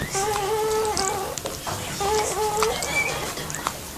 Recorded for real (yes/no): yes